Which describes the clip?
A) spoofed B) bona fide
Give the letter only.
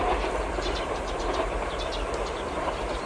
A